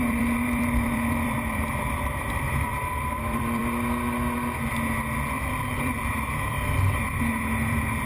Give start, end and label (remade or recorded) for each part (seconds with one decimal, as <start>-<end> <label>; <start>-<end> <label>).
0.0-3.6 remade; 3.6-6.1 recorded; 6.1-8.1 remade